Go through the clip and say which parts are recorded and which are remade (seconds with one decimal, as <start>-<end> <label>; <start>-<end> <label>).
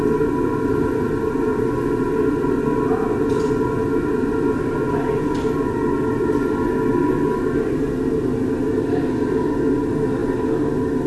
0.0-11.1 recorded